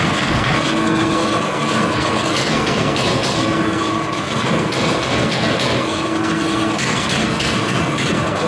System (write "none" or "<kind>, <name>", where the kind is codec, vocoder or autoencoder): codec, SNAC